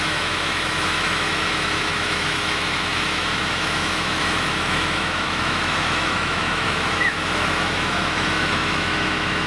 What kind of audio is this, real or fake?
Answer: fake